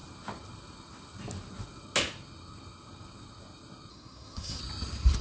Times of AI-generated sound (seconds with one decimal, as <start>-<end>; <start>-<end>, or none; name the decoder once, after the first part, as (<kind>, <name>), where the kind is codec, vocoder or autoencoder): 3.9-4.6 (codec, SNAC)